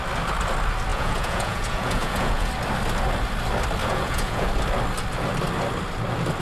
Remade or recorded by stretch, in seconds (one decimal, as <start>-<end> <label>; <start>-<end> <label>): 0.0-0.9 recorded; 0.9-2.5 remade; 2.5-3.8 recorded; 3.8-4.5 remade; 4.5-6.4 recorded